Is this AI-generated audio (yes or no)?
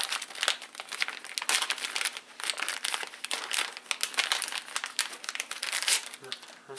no